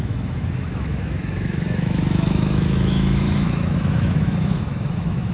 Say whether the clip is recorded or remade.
remade